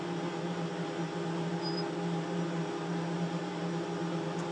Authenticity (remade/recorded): recorded